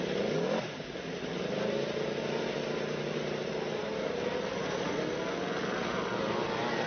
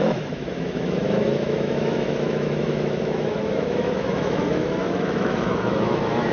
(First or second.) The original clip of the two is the first